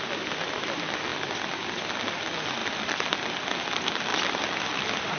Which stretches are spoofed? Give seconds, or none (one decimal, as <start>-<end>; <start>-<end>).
none